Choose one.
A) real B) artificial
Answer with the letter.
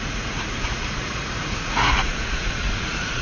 B